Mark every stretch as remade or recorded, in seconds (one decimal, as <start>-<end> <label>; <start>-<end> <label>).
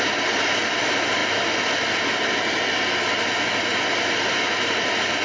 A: 0.0-5.2 recorded